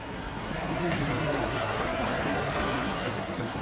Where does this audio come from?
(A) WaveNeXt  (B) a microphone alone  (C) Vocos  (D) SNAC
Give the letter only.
D